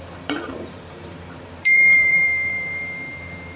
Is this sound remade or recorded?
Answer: remade